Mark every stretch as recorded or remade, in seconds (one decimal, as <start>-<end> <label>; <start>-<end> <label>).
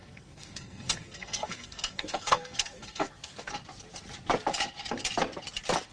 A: 0.0-3.5 remade; 3.5-5.9 recorded